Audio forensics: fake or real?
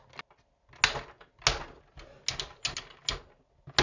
real